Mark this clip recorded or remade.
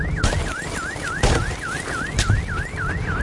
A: recorded